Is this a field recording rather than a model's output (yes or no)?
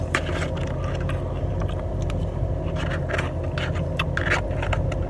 yes